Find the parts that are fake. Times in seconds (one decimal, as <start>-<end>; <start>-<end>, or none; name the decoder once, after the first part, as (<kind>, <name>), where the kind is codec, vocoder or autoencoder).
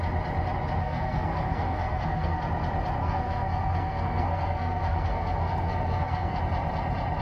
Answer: 0.8-2.4 (codec, SNAC); 3.0-6.4